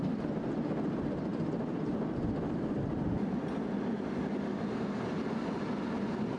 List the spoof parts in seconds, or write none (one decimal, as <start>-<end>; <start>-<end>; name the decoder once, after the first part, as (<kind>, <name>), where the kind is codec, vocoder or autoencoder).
none